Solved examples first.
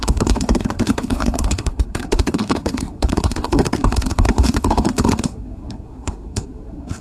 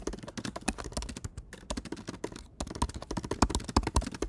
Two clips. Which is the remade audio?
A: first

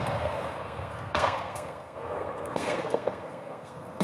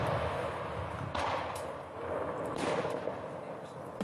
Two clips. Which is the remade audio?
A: first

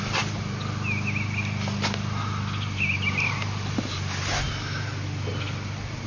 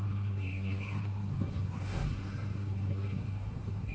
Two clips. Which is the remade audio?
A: second